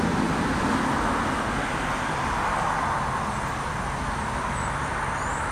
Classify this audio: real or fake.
real